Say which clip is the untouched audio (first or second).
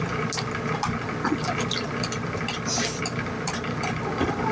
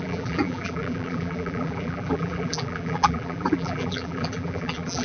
first